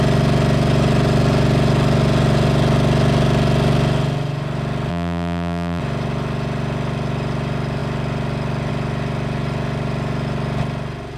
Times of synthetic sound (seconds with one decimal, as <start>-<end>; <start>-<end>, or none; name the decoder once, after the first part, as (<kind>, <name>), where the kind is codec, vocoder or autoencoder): 4.9-5.8 (vocoder, BigVGAN v2)